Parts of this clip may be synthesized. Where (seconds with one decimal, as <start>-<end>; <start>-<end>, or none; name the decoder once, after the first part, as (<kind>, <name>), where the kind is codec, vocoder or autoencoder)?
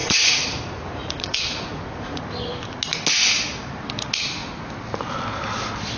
0.0-2.2 (vocoder, Vocos)